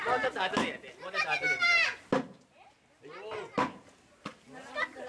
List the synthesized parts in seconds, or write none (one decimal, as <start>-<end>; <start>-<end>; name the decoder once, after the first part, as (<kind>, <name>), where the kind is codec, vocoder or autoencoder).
none